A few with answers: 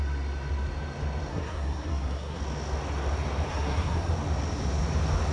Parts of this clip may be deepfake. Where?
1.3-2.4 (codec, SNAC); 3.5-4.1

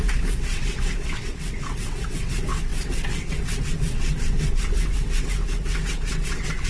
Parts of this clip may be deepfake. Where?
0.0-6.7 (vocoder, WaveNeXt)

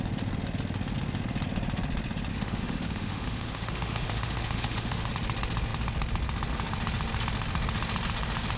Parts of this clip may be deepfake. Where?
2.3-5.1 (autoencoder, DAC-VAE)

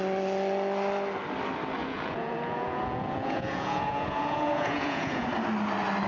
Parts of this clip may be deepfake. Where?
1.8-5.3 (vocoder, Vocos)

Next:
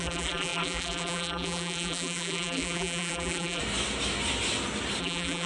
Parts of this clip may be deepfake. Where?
0.0-3.6 (vocoder, BigVGAN v2); 5.0-5.5

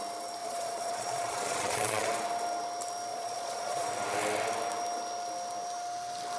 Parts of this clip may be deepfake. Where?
0.4-2.1 (vocoder, Vocos); 3.1-3.9

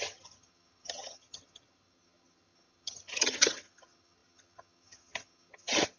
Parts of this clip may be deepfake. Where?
0.0-6.0 (vocoder, HiFi-GAN)

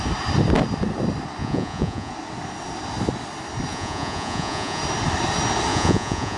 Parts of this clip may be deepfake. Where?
1.4-2.1 (vocoder, Vocos); 3.7-4.8; 5.7-6.4